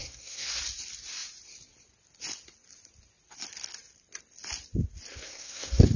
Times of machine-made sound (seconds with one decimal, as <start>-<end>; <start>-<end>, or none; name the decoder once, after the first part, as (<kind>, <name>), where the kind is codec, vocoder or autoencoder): 0.0-0.6 (codec, SNAC); 5.1-6.0